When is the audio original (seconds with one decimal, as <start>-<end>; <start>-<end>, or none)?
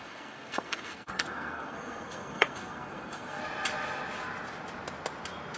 3.4-5.6